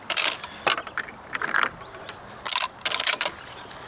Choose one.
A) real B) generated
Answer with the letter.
A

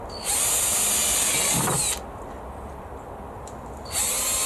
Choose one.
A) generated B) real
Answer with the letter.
B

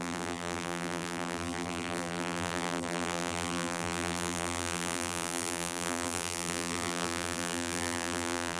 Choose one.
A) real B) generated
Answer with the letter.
B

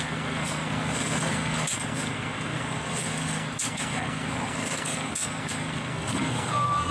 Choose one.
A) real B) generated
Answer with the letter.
B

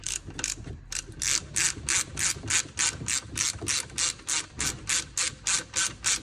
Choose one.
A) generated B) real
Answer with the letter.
B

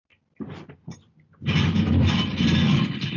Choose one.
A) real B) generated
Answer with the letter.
A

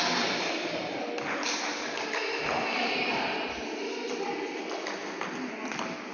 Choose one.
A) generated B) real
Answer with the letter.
B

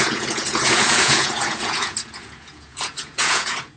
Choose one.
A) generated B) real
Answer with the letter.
A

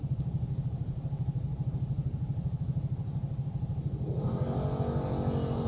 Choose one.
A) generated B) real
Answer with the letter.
B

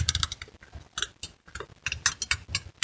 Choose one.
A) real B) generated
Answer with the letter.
A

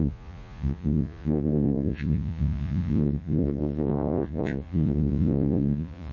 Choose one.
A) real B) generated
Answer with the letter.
B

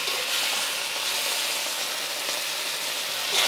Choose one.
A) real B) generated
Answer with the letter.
A